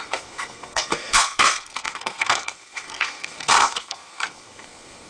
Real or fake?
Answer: fake